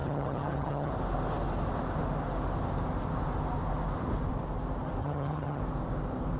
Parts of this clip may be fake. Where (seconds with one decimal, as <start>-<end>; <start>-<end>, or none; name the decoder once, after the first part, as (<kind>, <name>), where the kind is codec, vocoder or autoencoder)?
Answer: 0.0-0.9 (vocoder, HiFi-GAN); 5.0-5.6